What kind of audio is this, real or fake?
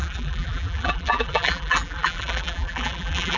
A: fake